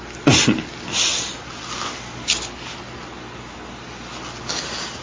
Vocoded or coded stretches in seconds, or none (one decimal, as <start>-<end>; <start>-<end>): none